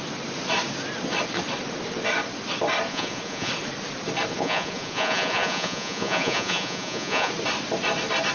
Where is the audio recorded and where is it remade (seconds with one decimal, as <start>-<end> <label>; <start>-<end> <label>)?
0.0-2.9 recorded; 2.9-3.5 remade; 3.5-4.3 recorded; 4.3-7.3 remade; 7.3-8.3 recorded